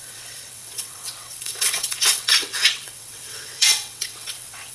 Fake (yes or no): yes